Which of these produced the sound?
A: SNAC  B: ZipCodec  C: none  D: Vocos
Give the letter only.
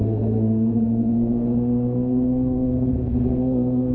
A